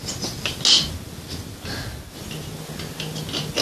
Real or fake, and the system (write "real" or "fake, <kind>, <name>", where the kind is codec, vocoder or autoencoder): real